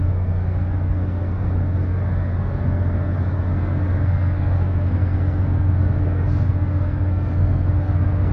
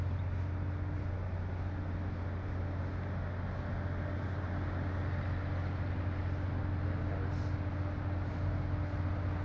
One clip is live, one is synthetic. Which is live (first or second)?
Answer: second